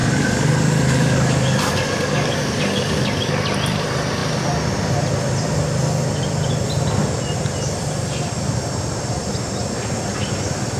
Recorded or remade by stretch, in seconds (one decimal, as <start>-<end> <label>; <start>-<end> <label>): 0.0-3.3 remade; 3.3-10.8 recorded